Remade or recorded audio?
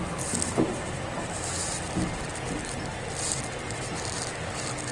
recorded